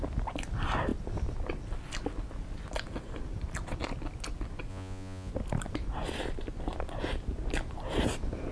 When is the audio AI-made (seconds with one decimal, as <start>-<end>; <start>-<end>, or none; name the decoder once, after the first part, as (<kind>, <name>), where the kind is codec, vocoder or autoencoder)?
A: 4.7-5.3 (vocoder, Vocos)